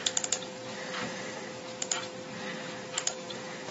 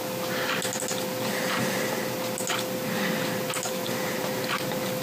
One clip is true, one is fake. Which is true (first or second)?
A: second